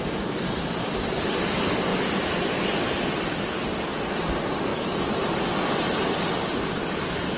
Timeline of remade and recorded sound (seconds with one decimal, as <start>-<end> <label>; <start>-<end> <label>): 0.0-1.9 remade; 1.9-3.0 recorded; 3.0-4.7 remade; 4.7-6.3 recorded; 6.3-7.4 remade